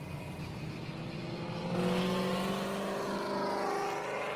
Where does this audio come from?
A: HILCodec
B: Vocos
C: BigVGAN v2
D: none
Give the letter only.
D